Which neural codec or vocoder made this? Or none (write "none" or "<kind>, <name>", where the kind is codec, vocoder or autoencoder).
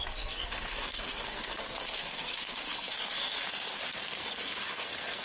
codec, SNAC